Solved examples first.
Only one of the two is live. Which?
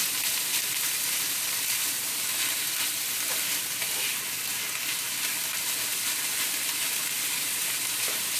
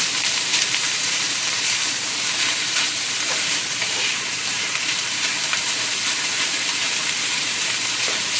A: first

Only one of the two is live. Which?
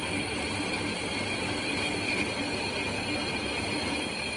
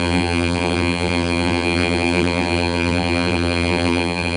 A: first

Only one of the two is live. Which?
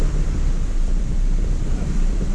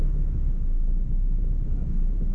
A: second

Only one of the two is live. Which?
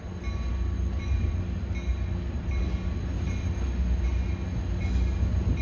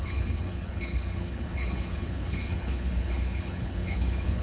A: first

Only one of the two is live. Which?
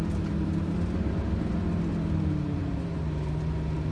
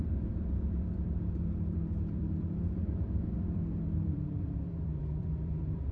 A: first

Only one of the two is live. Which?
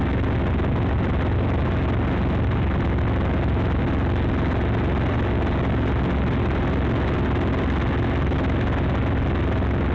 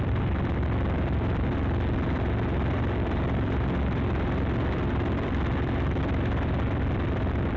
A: first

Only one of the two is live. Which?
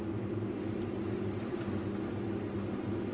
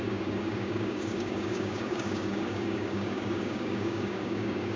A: first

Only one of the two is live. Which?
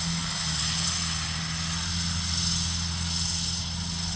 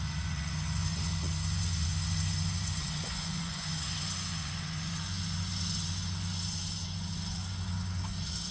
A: first